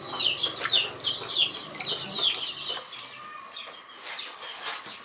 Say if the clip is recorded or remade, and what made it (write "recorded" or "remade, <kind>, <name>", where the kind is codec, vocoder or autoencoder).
recorded